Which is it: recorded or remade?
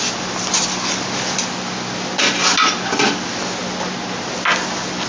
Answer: recorded